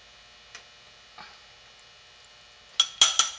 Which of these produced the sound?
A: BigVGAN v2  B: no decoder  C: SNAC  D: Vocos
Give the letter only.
B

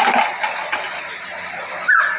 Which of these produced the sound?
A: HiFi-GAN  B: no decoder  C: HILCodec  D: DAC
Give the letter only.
B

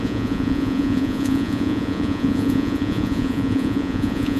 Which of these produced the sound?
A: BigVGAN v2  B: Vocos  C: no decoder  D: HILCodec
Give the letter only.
B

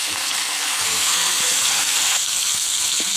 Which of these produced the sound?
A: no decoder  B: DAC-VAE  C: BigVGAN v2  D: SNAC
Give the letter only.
D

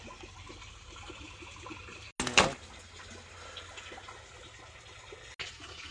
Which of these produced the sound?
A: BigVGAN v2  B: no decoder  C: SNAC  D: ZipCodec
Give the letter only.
B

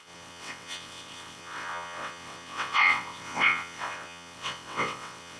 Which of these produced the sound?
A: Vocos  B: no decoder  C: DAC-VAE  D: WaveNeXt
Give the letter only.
D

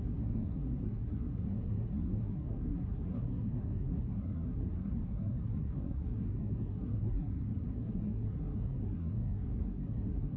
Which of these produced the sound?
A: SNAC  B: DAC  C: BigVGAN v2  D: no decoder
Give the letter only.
A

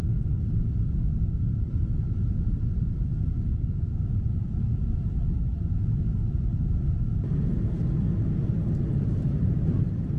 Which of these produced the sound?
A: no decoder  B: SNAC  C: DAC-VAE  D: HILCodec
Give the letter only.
A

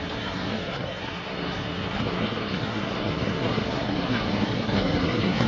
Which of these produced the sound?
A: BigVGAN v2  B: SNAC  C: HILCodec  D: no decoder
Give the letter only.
B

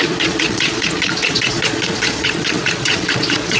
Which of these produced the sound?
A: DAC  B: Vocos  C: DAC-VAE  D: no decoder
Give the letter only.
B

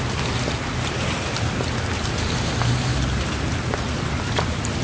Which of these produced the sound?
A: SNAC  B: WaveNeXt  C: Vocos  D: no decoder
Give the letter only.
D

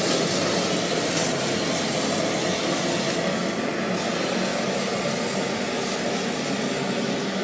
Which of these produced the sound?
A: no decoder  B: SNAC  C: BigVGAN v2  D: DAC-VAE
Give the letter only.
A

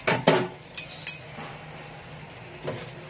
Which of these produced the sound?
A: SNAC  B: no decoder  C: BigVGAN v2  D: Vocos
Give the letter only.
B